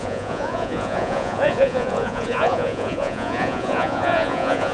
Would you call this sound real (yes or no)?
no